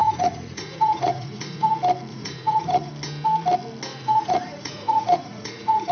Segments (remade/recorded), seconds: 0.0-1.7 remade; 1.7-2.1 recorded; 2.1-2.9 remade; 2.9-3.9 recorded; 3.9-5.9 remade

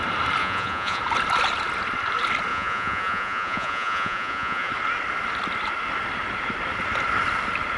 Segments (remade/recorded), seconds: 0.0-0.4 recorded; 0.4-1.0 remade; 1.0-2.5 recorded; 2.5-4.7 remade; 4.7-7.8 recorded

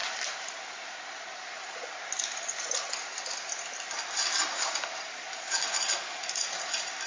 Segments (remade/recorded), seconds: 0.0-7.1 recorded